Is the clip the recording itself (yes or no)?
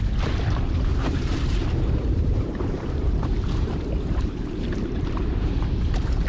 no